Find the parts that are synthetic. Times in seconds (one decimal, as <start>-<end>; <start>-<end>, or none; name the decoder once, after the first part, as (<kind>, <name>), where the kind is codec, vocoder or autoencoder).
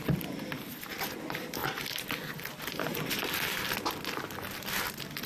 none